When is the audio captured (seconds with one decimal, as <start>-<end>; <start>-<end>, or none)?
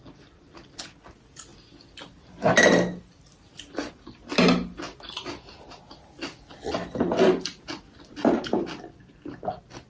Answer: 0.0-9.9